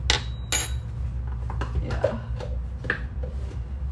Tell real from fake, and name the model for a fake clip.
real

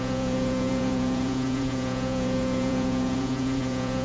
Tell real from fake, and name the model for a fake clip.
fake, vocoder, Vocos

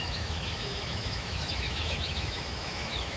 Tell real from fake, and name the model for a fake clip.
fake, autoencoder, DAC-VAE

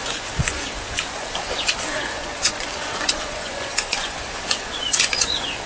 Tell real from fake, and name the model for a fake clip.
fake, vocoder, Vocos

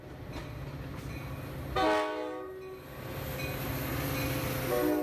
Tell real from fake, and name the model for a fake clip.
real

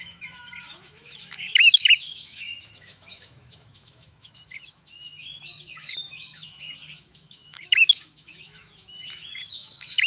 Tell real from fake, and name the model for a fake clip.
fake, autoencoder, DAC-VAE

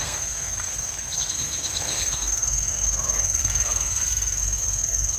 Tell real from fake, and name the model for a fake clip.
fake, codec, SNAC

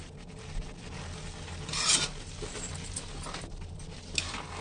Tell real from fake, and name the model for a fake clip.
real